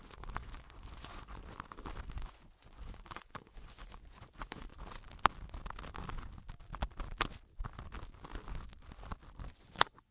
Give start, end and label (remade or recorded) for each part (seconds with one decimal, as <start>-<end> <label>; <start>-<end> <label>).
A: 0.0-1.4 remade; 1.4-2.1 recorded; 2.1-4.7 remade; 4.7-9.6 recorded; 9.6-10.1 remade